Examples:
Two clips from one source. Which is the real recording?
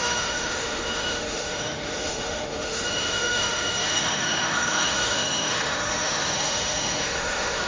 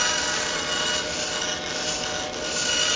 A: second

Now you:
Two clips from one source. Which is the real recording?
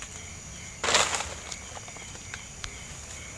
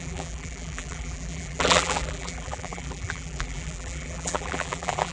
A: first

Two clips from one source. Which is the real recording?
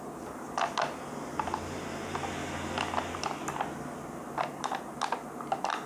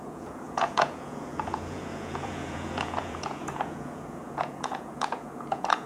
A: first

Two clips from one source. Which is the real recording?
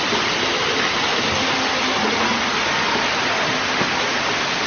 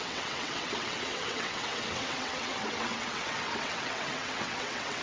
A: first